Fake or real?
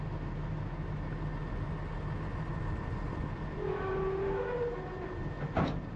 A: real